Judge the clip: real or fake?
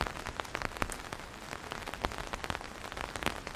real